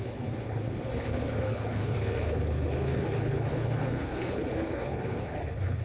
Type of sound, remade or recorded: remade